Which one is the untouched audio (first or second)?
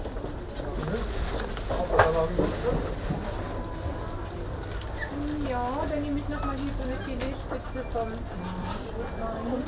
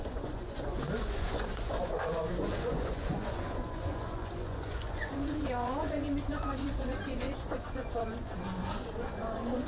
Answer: first